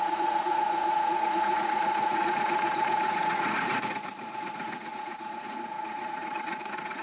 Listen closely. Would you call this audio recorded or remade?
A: remade